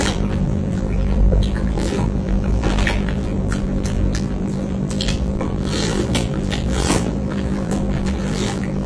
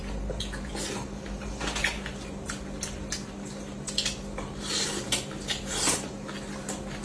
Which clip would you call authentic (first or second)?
second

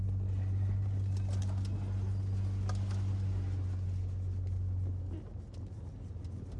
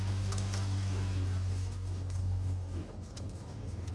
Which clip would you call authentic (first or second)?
first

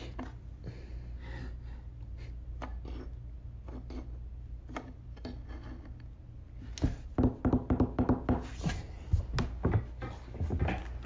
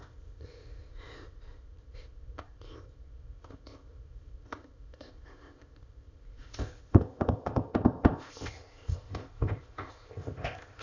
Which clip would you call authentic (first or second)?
first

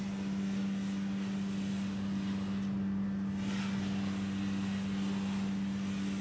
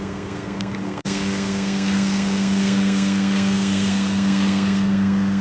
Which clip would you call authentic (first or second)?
first